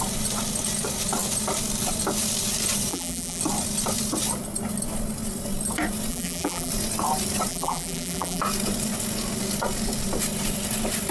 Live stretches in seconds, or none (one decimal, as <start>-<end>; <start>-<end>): 0.0-2.9; 3.4-6.1; 6.7-7.5; 8.4-11.1